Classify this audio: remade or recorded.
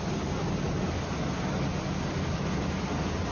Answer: recorded